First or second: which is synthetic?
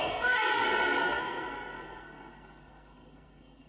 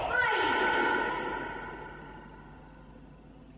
first